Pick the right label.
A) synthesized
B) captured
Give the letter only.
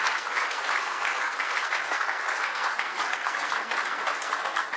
A